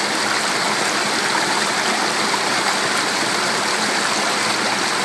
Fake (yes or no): no